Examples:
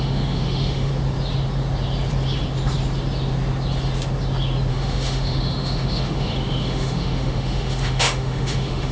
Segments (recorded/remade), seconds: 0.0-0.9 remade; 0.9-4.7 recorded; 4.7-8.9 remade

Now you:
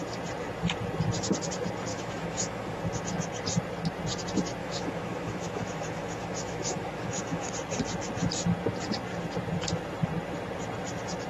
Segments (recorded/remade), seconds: 0.0-1.9 recorded; 1.9-2.8 remade; 2.8-4.6 recorded; 4.6-7.5 remade; 7.5-11.3 recorded

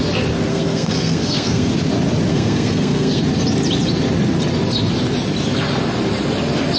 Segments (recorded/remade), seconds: 0.0-0.5 recorded; 0.5-1.7 remade; 1.7-2.3 recorded; 2.3-3.2 remade; 3.2-6.8 recorded

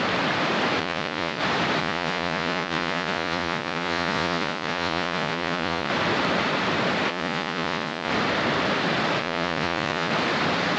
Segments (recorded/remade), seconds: 0.0-0.8 recorded; 0.8-1.4 remade; 1.4-1.8 recorded; 1.8-5.9 remade; 5.9-7.1 recorded; 7.1-8.1 remade; 8.1-9.2 recorded; 9.2-10.1 remade; 10.1-10.8 recorded